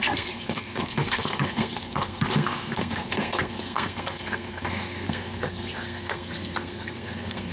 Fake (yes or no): yes